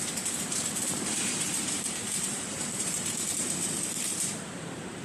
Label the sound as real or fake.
fake